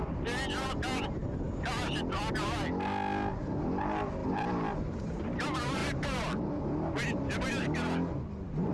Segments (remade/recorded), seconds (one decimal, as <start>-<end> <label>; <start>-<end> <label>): 0.0-8.7 recorded